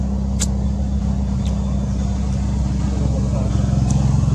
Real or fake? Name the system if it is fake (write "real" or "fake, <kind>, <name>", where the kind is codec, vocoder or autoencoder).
real